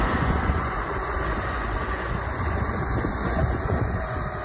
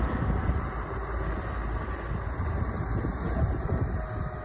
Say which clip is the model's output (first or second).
first